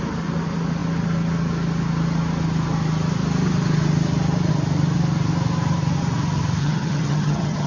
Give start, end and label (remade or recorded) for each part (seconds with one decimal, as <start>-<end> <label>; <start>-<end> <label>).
0.0-6.6 recorded; 6.6-7.7 remade